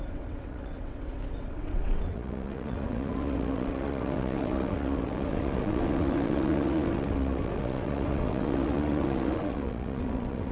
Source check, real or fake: fake